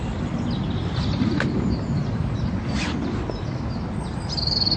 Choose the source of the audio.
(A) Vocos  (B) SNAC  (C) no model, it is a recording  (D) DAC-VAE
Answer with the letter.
C